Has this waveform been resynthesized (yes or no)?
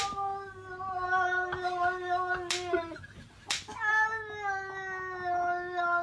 no